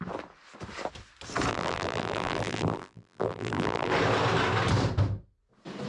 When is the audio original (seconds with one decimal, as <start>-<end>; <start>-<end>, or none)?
0.0-1.5; 3.9-5.9